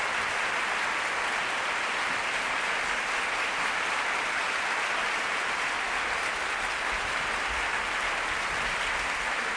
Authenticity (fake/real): real